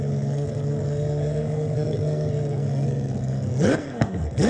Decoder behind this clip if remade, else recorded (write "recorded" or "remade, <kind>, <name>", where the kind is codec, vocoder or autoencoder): remade, codec, SNAC